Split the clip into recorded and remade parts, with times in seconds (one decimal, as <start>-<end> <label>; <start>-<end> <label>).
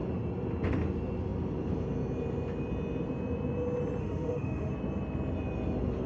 0.0-4.0 recorded; 4.0-4.7 remade; 4.7-6.1 recorded